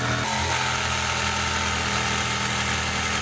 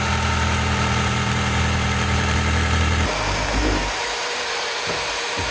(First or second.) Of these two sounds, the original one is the first